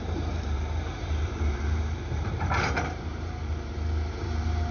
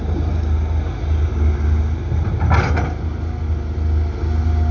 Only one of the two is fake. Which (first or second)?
first